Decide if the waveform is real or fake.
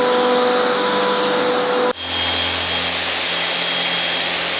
real